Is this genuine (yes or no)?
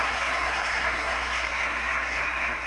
no